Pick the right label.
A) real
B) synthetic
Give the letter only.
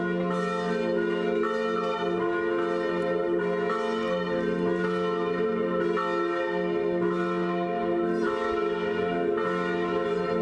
A